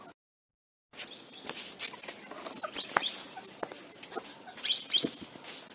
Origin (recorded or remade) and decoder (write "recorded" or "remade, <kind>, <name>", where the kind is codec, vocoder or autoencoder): recorded